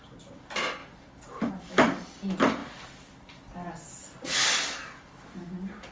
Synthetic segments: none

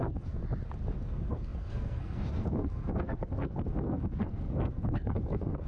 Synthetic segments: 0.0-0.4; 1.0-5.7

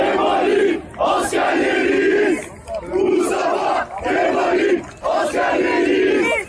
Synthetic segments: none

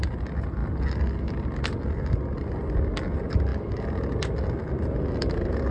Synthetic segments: none

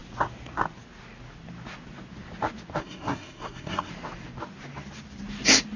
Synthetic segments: 2.8-3.9